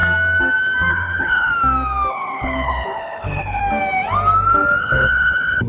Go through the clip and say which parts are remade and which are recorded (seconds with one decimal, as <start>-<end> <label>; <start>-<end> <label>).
0.0-0.9 recorded; 0.9-1.5 remade; 1.5-2.1 recorded; 2.1-3.6 remade; 3.6-4.8 recorded; 4.8-5.7 remade